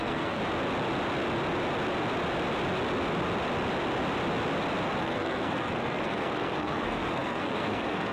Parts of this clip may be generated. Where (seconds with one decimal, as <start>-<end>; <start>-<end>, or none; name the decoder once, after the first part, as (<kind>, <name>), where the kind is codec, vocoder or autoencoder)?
0.0-0.4 (codec, SNAC); 5.0-8.1